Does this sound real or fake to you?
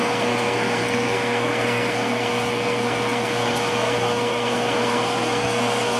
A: fake